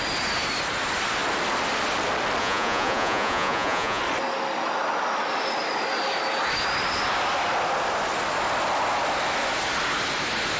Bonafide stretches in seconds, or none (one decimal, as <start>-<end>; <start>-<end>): 0.0-2.4; 4.0-10.6